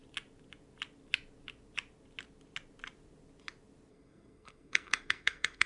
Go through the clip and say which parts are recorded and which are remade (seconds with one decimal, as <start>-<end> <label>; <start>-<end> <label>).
0.0-3.9 recorded; 3.9-5.7 remade